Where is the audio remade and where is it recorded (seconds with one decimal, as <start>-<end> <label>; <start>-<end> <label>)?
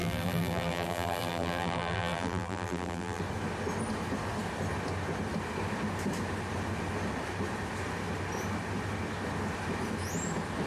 0.0-3.2 remade; 3.2-10.7 recorded